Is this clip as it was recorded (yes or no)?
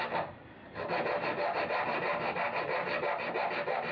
yes